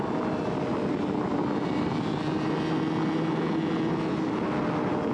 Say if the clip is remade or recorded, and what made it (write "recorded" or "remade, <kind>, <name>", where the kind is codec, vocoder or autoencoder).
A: recorded